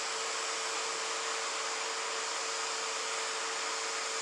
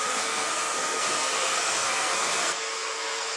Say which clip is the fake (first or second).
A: second